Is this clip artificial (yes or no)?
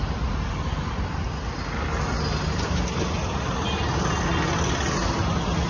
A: no